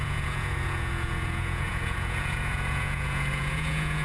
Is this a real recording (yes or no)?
no